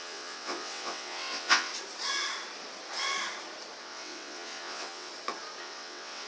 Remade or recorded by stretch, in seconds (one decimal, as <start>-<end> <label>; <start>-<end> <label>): 0.0-1.7 remade; 1.7-3.8 recorded; 3.8-5.1 remade; 5.1-5.6 recorded; 5.6-6.3 remade